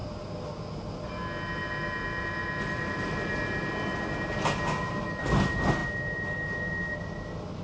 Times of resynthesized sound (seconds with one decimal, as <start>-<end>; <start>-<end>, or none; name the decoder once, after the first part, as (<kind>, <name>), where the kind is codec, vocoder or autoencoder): none